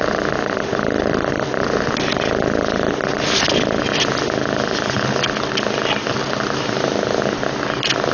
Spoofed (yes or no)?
no